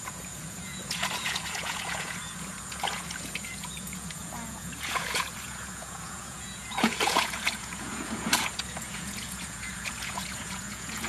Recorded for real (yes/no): no